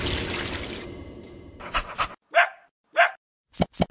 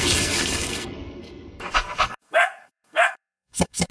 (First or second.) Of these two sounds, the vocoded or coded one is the second